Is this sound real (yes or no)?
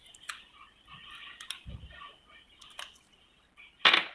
yes